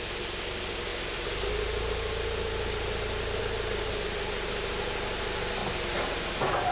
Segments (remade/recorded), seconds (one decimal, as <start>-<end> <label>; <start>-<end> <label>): 0.0-6.7 recorded